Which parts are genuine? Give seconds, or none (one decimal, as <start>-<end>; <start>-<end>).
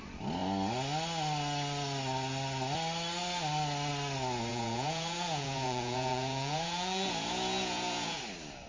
0.0-4.5; 8.2-8.7